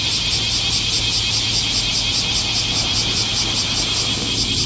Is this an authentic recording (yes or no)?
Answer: yes